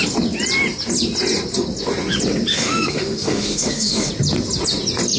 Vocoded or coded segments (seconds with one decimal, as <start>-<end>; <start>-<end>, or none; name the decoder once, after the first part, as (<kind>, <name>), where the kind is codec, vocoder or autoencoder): 2.5-4.1 (autoencoder, DAC-VAE)